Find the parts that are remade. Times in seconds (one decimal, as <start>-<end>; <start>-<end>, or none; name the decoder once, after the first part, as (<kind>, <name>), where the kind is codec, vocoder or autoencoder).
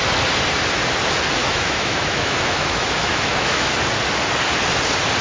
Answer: 1.4-3.7 (autoencoder, DAC-VAE)